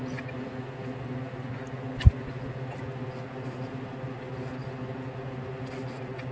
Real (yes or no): yes